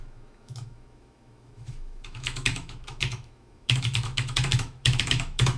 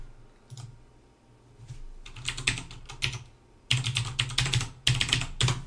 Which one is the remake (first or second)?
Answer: first